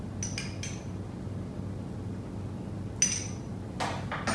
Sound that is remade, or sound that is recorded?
recorded